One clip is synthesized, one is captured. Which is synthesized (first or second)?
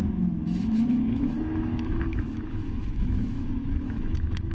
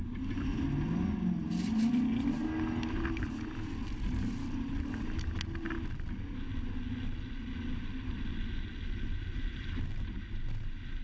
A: first